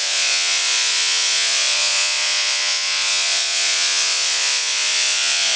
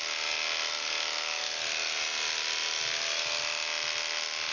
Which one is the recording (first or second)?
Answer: second